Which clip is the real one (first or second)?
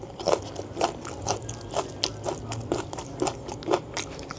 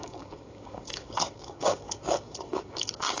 first